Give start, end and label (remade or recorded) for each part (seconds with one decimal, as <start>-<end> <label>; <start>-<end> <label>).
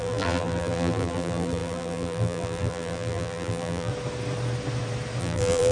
0.0-3.9 remade; 3.9-5.2 recorded; 5.2-5.7 remade